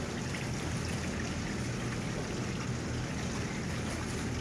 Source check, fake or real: real